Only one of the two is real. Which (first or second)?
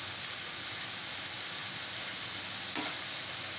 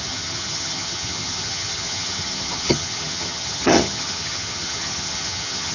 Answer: first